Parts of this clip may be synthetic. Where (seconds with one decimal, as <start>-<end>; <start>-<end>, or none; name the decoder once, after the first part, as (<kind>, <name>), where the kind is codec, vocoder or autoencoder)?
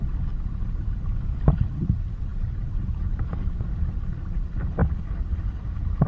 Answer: none